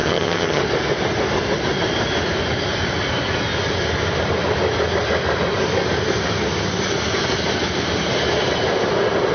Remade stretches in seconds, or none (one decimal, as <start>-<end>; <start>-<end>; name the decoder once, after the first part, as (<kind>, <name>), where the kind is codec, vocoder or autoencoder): 0.0-0.6 (vocoder, HiFi-GAN)